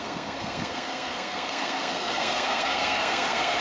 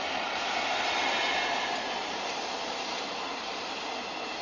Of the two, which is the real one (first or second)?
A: second